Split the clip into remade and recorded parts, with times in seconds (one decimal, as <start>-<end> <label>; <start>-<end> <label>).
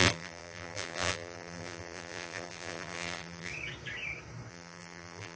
0.0-3.5 remade; 3.5-4.5 recorded; 4.5-5.4 remade